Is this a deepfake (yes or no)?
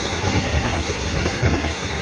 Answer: yes